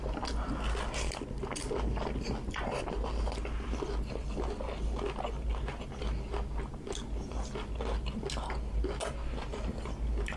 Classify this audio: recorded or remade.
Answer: recorded